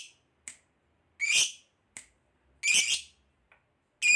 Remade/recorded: recorded